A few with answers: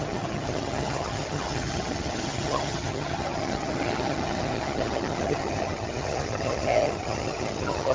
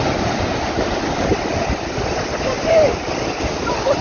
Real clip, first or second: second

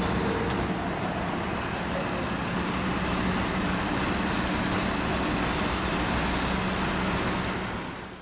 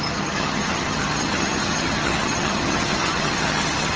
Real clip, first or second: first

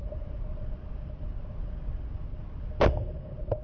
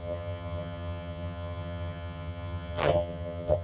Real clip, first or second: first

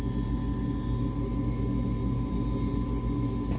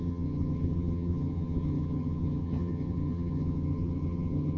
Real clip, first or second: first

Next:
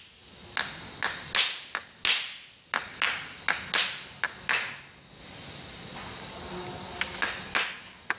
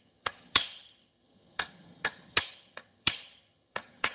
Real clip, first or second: first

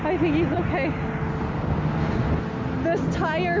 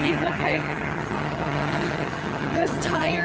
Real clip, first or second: first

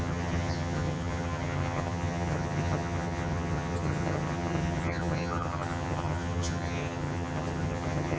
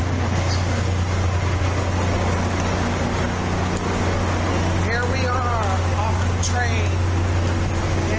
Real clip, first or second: second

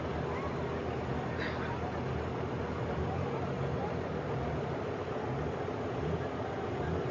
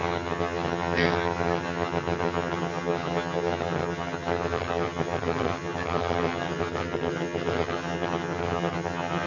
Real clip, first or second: first